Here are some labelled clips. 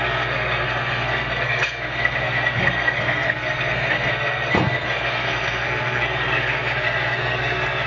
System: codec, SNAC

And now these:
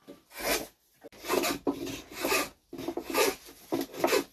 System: none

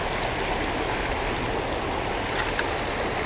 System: none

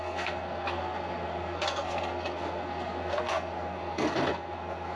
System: codec, SNAC